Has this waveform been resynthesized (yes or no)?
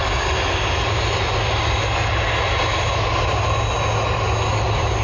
no